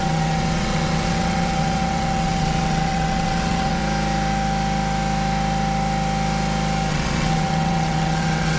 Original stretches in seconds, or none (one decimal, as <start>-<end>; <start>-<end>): 3.8-6.9